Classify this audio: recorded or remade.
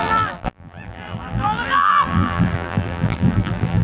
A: remade